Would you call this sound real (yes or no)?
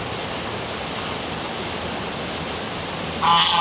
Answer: yes